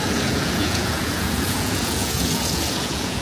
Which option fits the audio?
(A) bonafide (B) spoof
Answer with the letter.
B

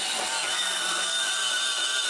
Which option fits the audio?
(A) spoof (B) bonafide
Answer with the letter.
B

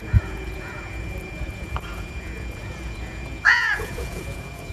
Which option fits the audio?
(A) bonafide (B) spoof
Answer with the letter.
B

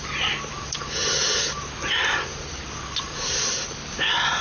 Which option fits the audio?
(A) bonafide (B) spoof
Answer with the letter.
A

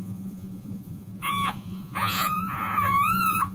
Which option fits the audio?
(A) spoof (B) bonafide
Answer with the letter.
A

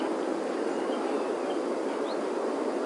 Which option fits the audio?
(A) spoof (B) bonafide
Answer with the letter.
B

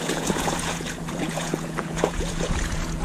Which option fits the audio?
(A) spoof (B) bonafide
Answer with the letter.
A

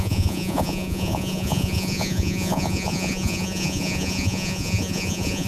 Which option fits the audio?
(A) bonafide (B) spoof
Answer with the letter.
B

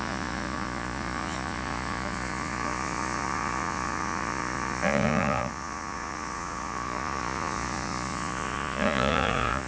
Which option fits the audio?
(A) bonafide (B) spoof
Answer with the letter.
B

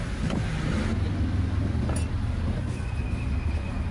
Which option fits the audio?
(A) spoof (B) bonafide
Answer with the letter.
B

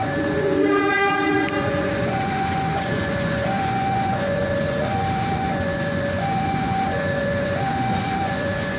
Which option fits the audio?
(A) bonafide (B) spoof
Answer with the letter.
B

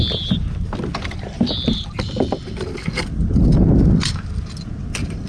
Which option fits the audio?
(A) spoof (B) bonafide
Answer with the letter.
B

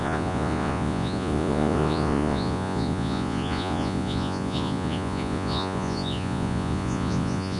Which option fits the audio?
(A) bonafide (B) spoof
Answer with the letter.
B